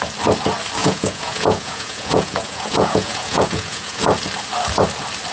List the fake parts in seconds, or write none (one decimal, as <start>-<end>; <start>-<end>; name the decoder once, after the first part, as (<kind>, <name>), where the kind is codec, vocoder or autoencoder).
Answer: 0.8-4.0 (vocoder, Vocos)